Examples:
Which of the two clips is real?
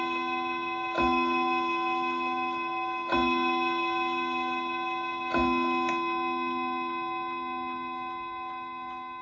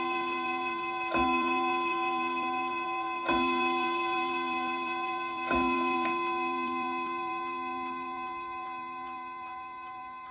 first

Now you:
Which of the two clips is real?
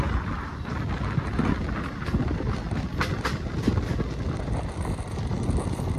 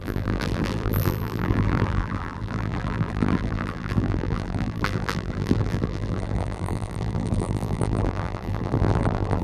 first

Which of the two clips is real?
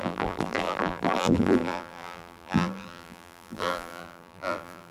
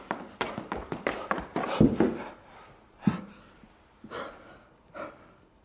second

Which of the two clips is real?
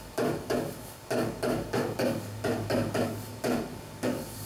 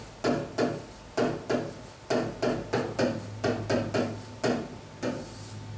second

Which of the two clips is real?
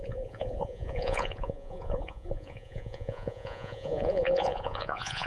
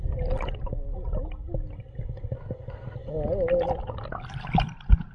second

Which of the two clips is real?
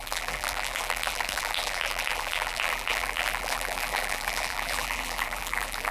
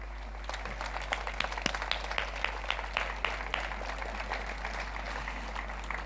second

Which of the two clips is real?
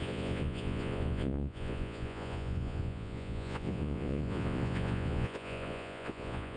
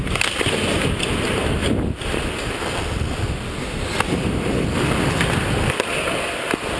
second